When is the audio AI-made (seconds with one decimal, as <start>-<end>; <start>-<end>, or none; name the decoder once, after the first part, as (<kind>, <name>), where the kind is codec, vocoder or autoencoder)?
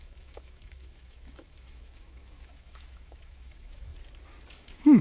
0.0-3.9 (autoencoder, DAC-VAE); 4.5-5.0